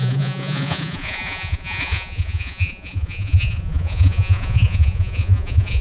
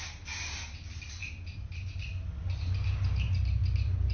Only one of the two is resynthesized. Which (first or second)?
first